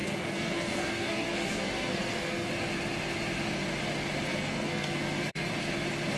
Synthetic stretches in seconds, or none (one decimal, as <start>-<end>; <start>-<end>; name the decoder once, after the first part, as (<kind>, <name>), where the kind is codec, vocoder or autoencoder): 0.0-2.5 (codec, SNAC); 4.3-5.5